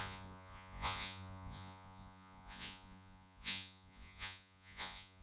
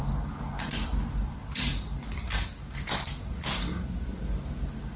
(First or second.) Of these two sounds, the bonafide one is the second